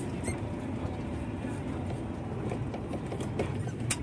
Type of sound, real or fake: real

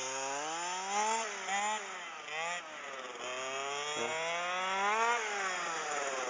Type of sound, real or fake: real